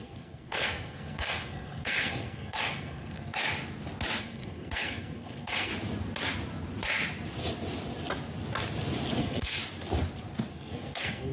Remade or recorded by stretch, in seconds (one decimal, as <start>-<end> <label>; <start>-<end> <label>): 0.0-3.4 remade; 3.4-4.2 recorded; 4.2-5.7 remade; 5.7-9.2 recorded; 9.2-9.6 remade; 9.6-10.5 recorded; 10.5-11.3 remade